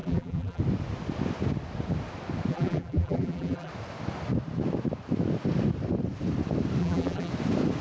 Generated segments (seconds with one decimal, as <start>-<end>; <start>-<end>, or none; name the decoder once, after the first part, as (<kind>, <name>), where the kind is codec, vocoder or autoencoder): 0.0-0.6 (vocoder, BigVGAN v2); 2.5-3.7; 6.8-7.3